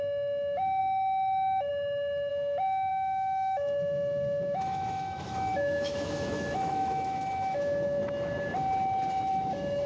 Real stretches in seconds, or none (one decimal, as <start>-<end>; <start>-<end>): 2.3-2.9; 8.0-9.3